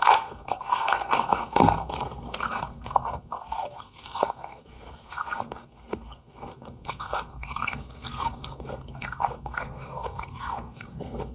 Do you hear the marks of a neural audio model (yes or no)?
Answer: yes